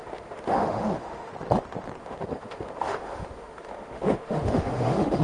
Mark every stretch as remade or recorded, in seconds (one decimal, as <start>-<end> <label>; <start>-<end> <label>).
0.0-1.3 remade; 1.3-2.0 recorded; 2.0-5.2 remade